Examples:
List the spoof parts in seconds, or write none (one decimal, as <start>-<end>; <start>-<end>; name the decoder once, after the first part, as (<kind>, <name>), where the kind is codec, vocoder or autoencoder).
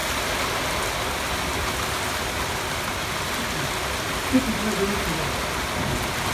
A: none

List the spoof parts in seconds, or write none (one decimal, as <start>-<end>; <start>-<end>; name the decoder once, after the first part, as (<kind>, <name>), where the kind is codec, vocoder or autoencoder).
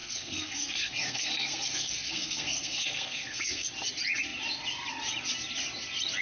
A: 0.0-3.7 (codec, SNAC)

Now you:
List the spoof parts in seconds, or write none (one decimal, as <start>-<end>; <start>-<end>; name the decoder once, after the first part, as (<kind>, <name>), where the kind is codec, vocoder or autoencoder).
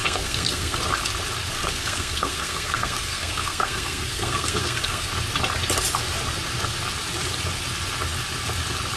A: 0.0-0.8 (codec, SNAC); 1.5-5.1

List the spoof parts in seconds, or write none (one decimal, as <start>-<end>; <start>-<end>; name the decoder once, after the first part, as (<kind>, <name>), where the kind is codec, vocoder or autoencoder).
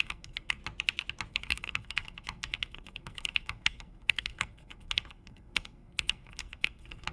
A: 0.0-0.6 (codec, SNAC); 1.3-7.1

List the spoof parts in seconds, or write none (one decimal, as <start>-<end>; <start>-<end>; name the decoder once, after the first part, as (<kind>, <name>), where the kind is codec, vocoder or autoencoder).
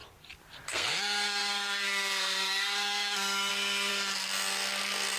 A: 0.7-3.9 (codec, SNAC)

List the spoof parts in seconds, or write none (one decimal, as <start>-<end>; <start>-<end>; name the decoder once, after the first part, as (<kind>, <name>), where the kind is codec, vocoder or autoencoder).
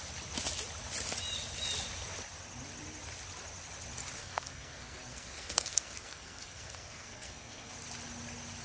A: 4.2-7.7 (codec, SNAC)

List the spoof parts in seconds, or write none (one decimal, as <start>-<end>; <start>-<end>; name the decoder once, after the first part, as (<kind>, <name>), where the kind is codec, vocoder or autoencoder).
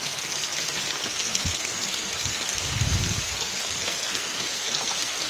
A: 0.0-5.3 (codec, SNAC)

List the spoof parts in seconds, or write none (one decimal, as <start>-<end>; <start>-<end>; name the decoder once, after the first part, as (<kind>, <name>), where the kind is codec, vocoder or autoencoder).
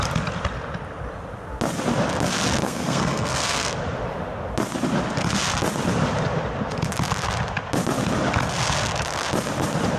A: 2.6-3.7 (codec, SNAC)